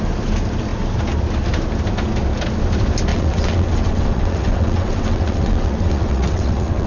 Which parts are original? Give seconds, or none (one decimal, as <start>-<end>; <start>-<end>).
0.0-3.1